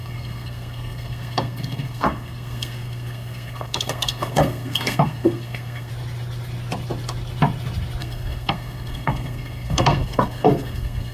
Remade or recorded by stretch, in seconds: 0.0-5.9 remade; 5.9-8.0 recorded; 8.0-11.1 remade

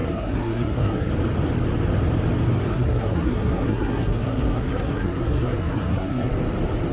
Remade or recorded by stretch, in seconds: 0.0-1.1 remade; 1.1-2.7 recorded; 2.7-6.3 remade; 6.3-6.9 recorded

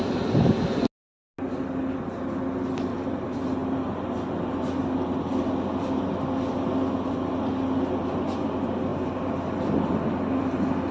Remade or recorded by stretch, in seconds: 0.0-10.9 recorded